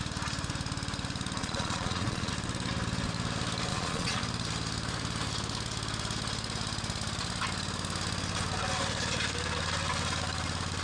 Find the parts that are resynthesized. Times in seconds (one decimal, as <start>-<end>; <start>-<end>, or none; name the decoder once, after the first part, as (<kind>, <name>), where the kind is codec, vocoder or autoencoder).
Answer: 1.4-2.3 (vocoder, Vocos); 3.7-4.2